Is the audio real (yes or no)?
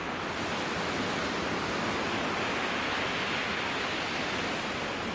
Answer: yes